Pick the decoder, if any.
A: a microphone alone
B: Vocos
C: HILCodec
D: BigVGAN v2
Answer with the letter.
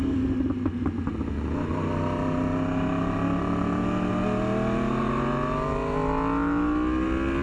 A